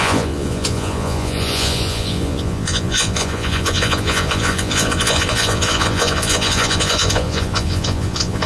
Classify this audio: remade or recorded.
remade